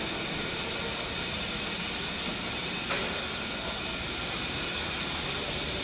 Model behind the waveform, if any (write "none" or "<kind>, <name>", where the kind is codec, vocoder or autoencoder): none